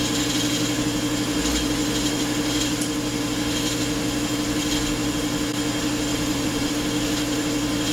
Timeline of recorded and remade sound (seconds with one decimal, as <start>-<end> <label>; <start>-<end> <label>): 0.0-6.1 recorded; 6.1-6.7 remade; 6.7-7.9 recorded